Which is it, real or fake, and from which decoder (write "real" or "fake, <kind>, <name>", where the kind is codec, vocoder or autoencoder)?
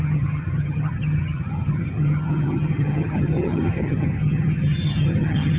fake, vocoder, HiFi-GAN